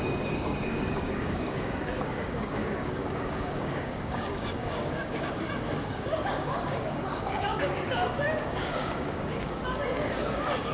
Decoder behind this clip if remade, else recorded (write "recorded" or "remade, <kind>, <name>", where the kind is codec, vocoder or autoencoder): remade, codec, DAC